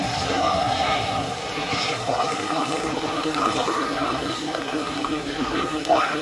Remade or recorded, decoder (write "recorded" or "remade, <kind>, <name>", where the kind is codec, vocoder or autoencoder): remade, codec, SNAC